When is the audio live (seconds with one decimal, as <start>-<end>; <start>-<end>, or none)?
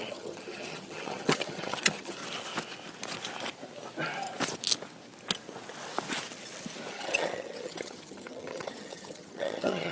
2.2-6.9